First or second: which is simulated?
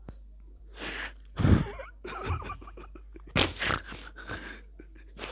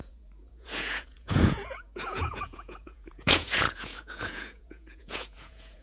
second